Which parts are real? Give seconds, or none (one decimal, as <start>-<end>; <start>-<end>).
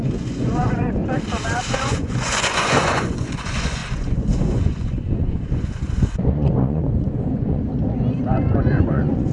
1.0-1.7; 7.7-8.3